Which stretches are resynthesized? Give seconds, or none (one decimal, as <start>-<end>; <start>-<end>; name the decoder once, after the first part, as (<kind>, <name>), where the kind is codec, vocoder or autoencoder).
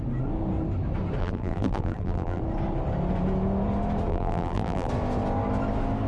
1.2-2.4 (vocoder, BigVGAN v2); 4.1-4.9